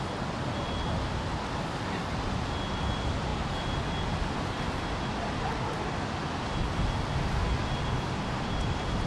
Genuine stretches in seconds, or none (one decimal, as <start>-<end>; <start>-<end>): 0.0-9.1